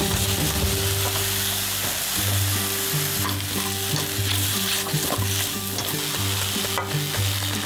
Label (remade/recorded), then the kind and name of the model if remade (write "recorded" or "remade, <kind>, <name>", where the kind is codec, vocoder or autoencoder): recorded